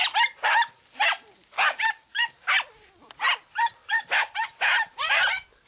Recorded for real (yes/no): yes